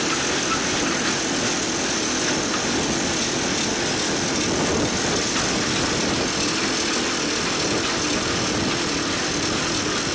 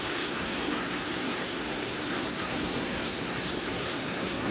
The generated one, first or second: second